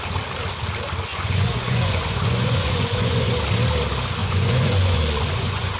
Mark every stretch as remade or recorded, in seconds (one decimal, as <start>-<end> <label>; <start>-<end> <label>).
0.0-1.1 recorded; 1.1-3.4 remade; 3.4-4.2 recorded; 4.2-5.8 remade